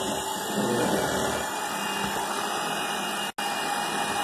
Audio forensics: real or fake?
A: real